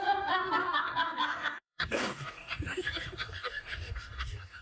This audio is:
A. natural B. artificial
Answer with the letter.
B